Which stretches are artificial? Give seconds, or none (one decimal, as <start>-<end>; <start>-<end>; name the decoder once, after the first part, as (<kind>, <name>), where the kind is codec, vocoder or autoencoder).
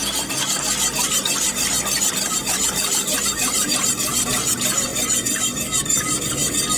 2.1-4.9 (vocoder, BigVGAN v2)